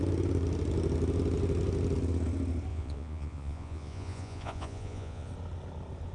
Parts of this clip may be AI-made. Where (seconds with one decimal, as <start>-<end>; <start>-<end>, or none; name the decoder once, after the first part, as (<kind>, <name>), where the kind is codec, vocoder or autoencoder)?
2.7-5.3 (vocoder, Vocos)